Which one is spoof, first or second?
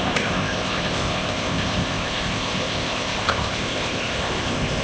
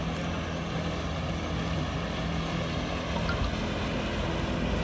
first